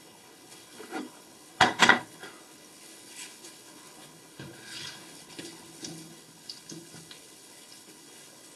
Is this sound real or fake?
fake